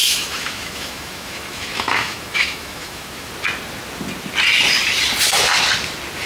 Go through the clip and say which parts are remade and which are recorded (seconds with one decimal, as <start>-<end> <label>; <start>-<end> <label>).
0.0-3.3 remade; 3.3-6.3 recorded